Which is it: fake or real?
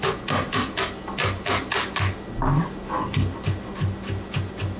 real